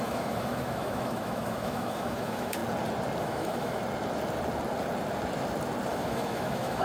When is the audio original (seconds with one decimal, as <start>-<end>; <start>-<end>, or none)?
2.6-3.2; 3.8-5.9